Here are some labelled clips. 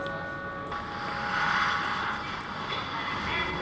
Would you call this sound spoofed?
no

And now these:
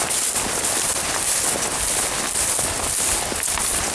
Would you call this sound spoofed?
no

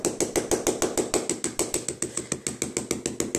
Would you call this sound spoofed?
no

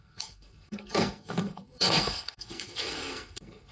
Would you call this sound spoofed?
yes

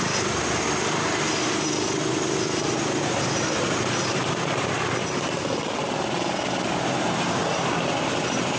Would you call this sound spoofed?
no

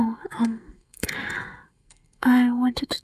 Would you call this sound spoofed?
yes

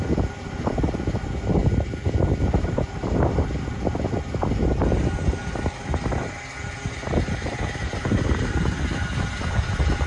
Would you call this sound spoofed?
no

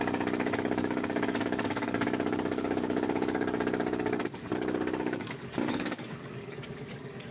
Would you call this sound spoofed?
yes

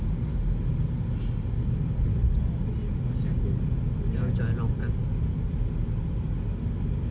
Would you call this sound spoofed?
no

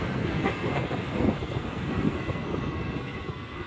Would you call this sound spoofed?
yes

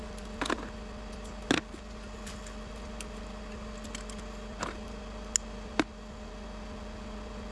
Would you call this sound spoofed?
no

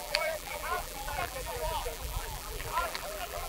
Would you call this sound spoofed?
yes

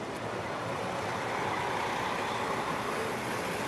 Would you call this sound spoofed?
no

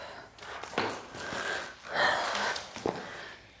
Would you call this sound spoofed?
no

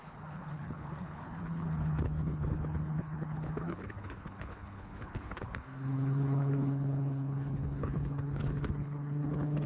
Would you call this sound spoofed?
yes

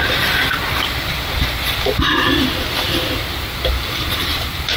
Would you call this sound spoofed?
yes